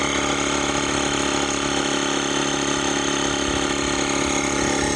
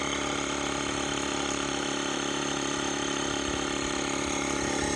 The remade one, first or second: second